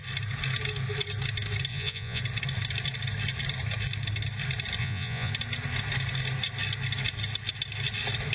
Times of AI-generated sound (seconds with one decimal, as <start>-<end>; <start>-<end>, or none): 1.7-2.2; 4.8-5.3